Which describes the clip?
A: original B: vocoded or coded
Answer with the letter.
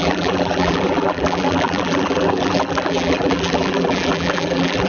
B